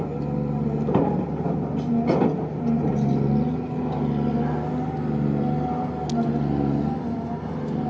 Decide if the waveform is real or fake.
real